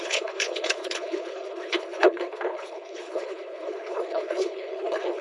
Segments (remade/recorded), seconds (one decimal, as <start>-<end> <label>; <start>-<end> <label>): 0.0-5.2 remade